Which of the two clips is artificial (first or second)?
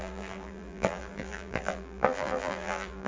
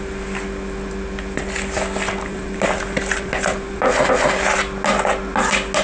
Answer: first